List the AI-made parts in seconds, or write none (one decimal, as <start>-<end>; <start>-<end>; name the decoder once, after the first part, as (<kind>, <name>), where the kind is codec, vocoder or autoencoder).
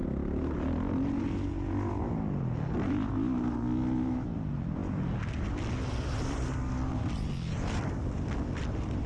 none